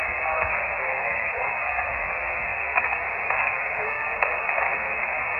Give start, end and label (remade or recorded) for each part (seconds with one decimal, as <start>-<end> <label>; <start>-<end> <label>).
0.0-5.4 remade